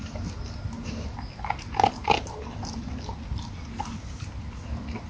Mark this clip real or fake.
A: real